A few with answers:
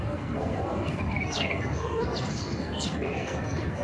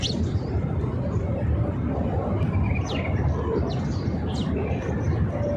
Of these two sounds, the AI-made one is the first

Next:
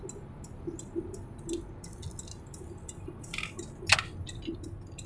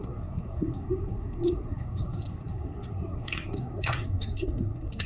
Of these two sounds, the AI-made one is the second